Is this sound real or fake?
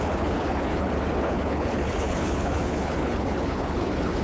fake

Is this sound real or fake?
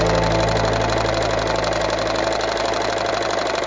real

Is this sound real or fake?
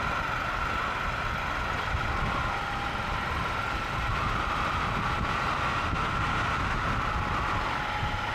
real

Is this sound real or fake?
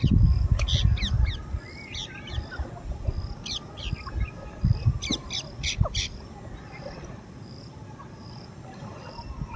real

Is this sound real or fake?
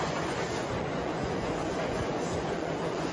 fake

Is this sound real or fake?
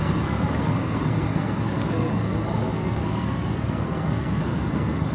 fake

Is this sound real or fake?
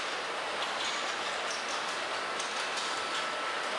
real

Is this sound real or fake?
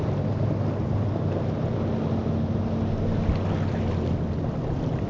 real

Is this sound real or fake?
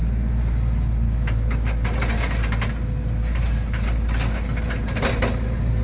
real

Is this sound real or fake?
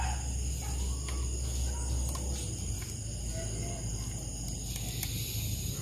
real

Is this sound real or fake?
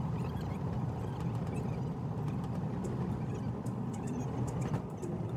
fake